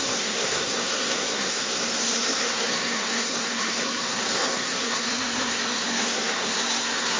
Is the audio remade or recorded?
remade